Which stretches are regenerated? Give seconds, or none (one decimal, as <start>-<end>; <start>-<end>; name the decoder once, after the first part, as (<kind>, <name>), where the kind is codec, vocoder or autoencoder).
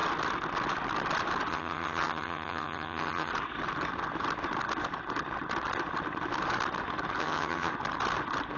1.5-3.3 (vocoder, HiFi-GAN); 7.2-7.7